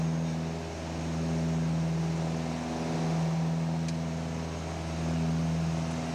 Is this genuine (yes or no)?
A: yes